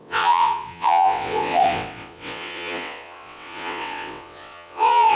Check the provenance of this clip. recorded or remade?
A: remade